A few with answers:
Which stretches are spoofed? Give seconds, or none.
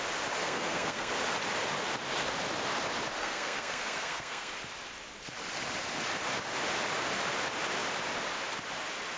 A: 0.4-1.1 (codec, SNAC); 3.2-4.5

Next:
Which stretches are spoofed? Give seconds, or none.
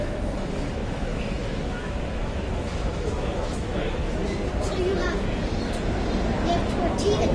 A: 0.0-4.2 (autoencoder, DAC-VAE)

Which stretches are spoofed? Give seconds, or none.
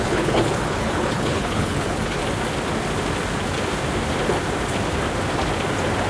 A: 0.0-2.2 (codec, HILCodec)